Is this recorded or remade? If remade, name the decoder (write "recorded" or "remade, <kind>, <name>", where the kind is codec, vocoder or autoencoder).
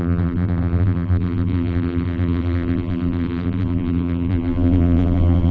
remade, vocoder, BigVGAN v2